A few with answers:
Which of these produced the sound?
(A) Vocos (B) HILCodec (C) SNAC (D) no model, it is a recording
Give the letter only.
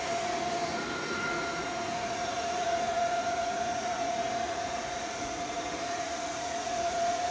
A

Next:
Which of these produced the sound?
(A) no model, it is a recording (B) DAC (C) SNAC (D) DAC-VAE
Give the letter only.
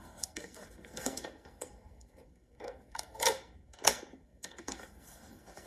C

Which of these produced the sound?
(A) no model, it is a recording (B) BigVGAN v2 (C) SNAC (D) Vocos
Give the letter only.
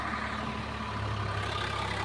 A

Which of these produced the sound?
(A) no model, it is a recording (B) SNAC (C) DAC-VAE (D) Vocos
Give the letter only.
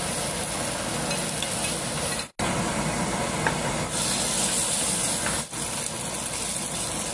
A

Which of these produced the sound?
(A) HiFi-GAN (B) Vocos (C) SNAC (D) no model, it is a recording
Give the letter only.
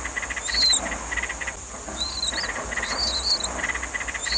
D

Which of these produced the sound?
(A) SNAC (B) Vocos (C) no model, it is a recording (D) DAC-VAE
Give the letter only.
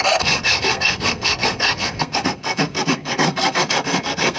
A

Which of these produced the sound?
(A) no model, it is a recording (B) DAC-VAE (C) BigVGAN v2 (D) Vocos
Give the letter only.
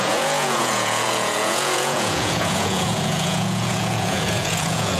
D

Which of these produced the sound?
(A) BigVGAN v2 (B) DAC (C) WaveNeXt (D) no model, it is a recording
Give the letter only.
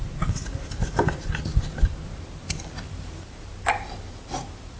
D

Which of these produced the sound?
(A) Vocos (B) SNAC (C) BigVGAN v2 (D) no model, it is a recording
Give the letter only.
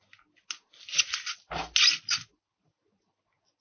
D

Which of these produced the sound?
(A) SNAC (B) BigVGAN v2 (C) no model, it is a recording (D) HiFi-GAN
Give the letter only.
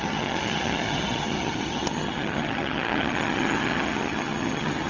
D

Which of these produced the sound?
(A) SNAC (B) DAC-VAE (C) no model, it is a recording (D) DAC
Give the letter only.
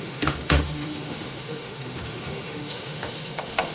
B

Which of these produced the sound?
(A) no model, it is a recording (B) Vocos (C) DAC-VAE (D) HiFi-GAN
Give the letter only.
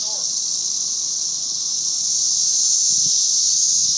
A